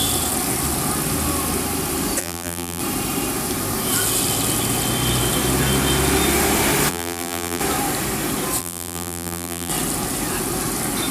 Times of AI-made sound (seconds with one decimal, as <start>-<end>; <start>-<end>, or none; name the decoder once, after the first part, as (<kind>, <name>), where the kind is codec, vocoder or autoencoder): 2.2-2.8 (vocoder, BigVGAN v2); 6.9-7.6; 8.6-9.7